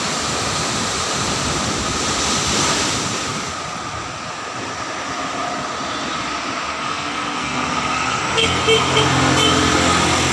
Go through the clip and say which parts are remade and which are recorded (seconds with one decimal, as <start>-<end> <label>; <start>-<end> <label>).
0.0-6.7 recorded; 6.7-8.6 remade; 8.6-10.3 recorded